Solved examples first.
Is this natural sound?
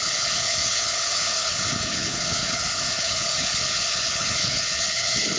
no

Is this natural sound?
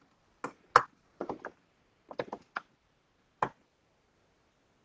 yes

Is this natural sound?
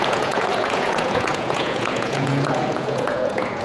no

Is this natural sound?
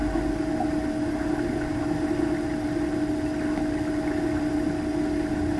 yes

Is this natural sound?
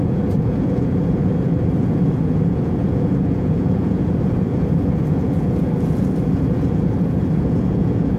no